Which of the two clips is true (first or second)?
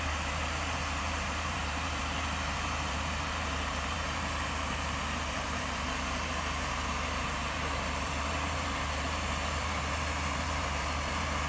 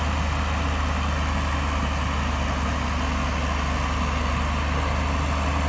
second